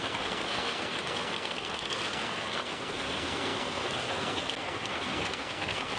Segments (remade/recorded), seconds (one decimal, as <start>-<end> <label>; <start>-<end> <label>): 0.0-6.0 remade